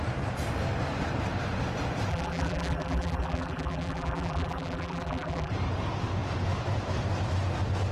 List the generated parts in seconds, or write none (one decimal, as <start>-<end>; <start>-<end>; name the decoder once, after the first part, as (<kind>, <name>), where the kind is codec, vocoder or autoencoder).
2.1-5.5 (vocoder, BigVGAN v2)